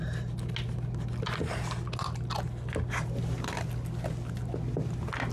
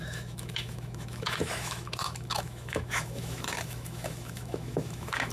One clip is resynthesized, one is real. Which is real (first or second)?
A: first